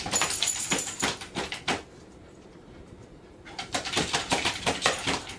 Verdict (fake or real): fake